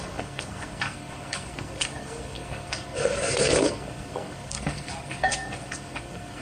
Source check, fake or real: fake